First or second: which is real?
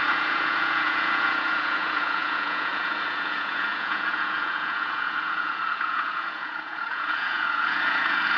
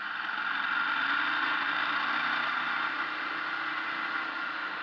second